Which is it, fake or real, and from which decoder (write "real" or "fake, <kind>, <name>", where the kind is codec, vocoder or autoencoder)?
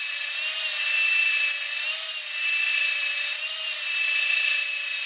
real